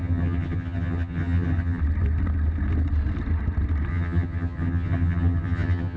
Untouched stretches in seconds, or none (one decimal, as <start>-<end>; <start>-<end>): 1.8-3.9